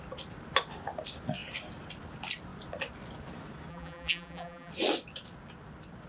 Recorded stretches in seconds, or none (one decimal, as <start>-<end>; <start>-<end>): 0.0-3.7; 4.7-6.1